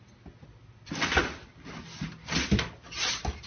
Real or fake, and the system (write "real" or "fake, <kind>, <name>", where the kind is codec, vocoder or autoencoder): real